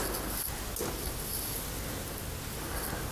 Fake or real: real